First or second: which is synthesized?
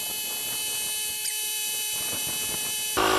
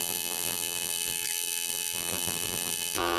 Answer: second